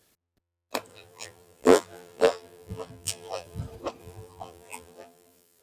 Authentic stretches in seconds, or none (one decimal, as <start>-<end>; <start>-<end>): 0.0-0.9; 3.6-4.0